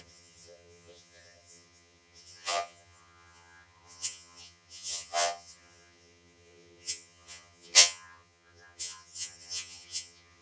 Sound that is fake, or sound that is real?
fake